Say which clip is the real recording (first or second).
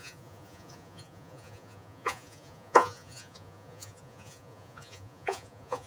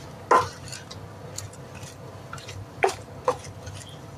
second